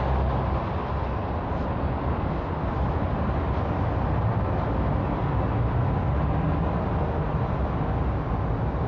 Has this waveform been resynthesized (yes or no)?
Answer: no